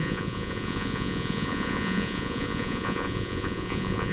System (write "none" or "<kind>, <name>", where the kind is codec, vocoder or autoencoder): vocoder, Vocos